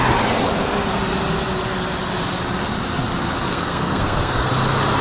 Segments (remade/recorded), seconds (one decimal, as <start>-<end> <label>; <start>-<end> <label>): 0.0-3.5 recorded; 3.5-4.5 remade; 4.5-5.0 recorded